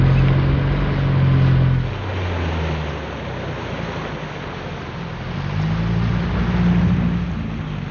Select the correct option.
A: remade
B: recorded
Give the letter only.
B